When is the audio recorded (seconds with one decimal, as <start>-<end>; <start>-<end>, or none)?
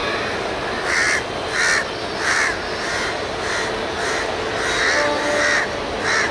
0.0-6.3